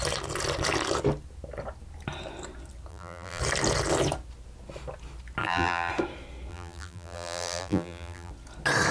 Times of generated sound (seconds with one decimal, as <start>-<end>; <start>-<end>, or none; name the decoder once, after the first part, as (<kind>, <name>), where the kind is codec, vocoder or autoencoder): 2.9-3.4 (vocoder, BigVGAN v2); 5.4-5.9; 6.5-8.3